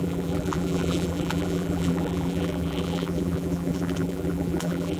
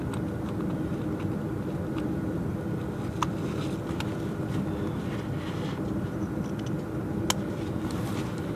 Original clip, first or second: second